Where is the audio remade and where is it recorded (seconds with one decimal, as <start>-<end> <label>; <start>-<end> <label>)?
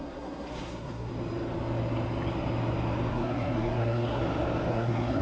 0.0-1.1 remade; 1.1-3.1 recorded; 3.1-4.2 remade; 4.2-4.7 recorded; 4.7-5.2 remade